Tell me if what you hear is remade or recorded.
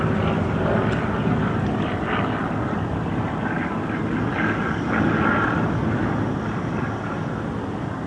recorded